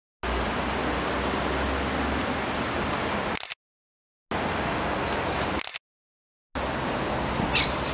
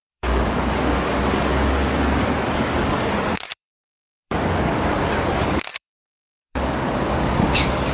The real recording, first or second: first